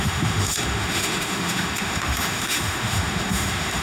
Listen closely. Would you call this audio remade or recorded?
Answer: remade